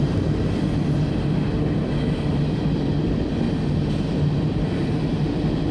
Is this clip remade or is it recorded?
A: recorded